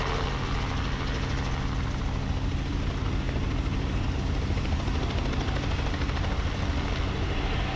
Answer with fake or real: real